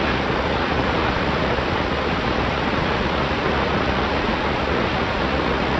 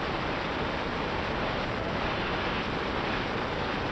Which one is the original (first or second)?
second